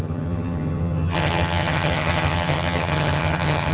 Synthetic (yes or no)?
yes